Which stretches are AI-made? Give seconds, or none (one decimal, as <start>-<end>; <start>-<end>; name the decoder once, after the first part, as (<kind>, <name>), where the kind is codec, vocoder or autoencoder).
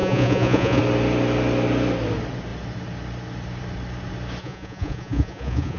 0.0-0.8 (vocoder, Vocos); 4.4-5.8